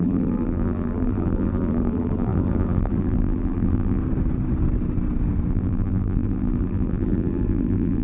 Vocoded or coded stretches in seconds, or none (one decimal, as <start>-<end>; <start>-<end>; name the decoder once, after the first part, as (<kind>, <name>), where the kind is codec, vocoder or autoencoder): 0.0-4.0 (vocoder, BigVGAN v2); 5.5-8.0